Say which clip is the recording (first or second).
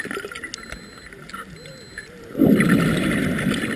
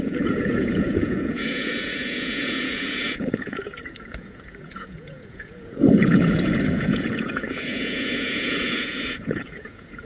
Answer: first